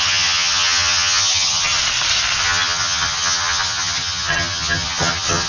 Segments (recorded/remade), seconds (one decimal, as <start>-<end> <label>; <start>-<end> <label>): 0.0-1.8 remade; 1.8-2.4 recorded; 2.4-5.5 remade